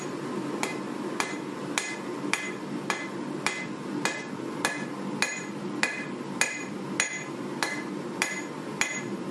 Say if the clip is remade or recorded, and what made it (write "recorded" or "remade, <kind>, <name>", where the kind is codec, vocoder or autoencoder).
recorded